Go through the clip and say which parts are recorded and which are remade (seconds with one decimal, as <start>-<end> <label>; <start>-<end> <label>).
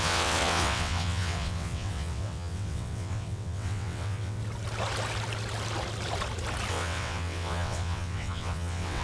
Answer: 0.0-4.4 remade; 4.4-6.7 recorded; 6.7-9.0 remade